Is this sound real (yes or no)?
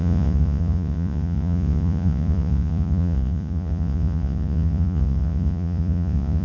no